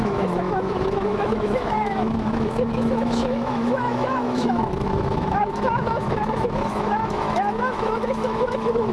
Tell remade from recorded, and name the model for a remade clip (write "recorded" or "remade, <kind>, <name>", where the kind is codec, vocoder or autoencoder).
remade, autoencoder, DAC-VAE